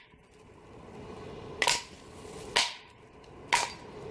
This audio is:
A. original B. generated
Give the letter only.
A